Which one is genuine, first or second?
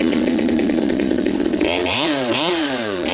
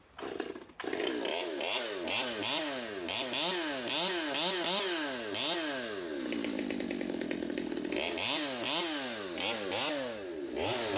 second